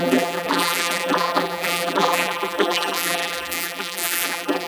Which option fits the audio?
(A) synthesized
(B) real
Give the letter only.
A